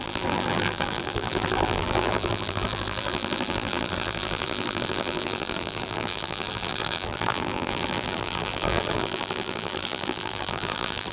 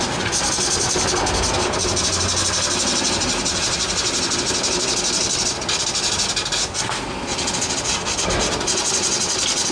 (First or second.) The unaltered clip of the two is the second